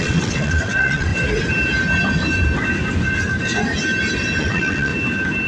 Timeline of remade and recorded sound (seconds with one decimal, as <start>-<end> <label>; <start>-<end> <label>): 0.0-1.1 remade; 1.1-4.4 recorded; 4.4-4.9 remade; 4.9-5.5 recorded